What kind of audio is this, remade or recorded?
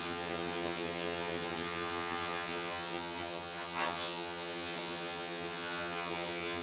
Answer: remade